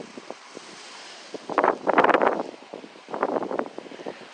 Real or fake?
fake